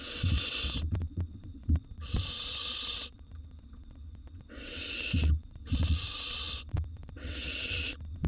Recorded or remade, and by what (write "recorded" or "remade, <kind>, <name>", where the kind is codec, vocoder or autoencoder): remade, vocoder, WaveNeXt